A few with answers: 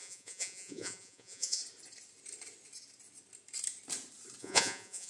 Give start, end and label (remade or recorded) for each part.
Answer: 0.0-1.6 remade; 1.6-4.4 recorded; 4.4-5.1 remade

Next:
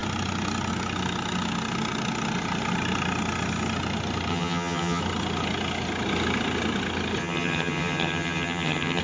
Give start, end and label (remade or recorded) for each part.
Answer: 0.0-4.3 recorded; 4.3-5.0 remade; 5.0-7.2 recorded; 7.2-9.0 remade

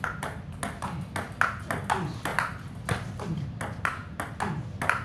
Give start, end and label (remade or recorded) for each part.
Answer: 0.0-2.3 recorded; 2.3-2.8 remade; 2.8-5.0 recorded

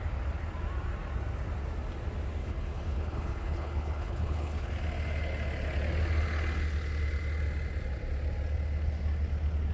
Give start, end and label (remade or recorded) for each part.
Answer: 0.0-2.4 recorded; 2.4-4.7 remade; 4.7-9.7 recorded

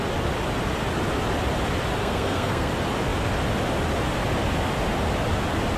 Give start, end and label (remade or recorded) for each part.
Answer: 0.0-2.0 recorded; 2.0-2.7 remade; 2.7-5.8 recorded

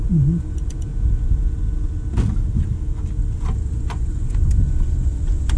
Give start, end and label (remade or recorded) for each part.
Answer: 0.0-0.9 remade; 0.9-3.7 recorded; 3.7-5.6 remade

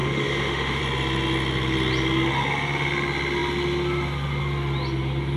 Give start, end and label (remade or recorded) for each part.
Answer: 0.0-0.8 remade; 0.8-5.4 recorded